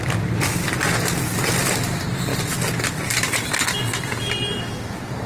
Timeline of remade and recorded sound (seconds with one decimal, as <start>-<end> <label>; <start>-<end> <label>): 0.0-5.3 recorded